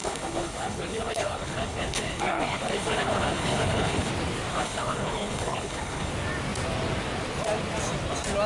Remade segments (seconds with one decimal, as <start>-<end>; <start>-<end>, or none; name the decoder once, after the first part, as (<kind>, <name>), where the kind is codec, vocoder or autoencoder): 0.0-4.1 (codec, HILCodec); 4.5-6.1